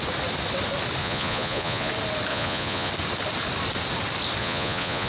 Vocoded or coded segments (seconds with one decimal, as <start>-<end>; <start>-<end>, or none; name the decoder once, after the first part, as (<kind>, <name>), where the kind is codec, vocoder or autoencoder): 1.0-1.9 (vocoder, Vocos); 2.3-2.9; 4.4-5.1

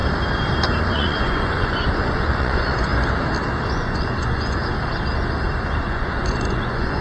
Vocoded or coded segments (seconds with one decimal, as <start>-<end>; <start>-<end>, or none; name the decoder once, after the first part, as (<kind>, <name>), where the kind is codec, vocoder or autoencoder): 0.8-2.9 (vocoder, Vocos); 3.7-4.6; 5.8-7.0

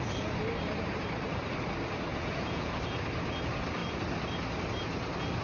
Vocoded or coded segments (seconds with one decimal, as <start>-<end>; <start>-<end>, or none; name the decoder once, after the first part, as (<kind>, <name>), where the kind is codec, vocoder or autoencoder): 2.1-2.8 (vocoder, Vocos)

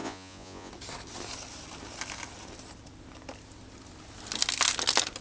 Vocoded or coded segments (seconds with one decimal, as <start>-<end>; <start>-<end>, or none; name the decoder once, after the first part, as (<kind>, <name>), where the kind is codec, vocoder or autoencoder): 0.0-0.7 (vocoder, Vocos)

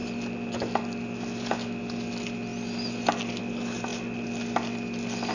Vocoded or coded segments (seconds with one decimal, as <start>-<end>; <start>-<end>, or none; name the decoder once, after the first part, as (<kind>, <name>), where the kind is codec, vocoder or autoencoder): none